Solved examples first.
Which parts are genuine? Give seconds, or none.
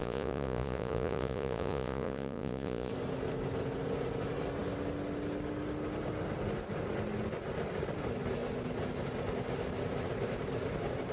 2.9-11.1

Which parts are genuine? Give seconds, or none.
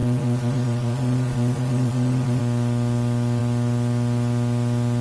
2.4-5.0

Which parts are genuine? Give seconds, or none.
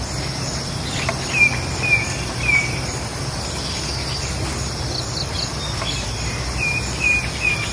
0.0-7.7